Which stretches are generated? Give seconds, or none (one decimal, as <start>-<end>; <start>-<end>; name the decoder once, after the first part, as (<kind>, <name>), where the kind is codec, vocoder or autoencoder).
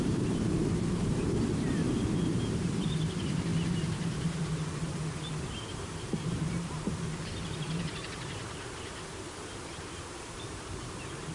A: 0.0-3.5 (vocoder, BigVGAN v2); 5.4-11.3